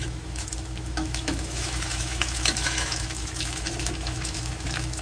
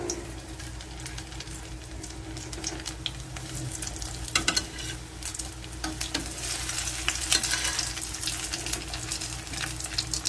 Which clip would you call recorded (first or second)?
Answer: second